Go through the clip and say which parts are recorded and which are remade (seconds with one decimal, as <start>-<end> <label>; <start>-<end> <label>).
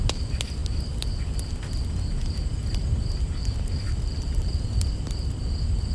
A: 0.0-3.4 recorded; 3.4-5.1 remade; 5.1-5.9 recorded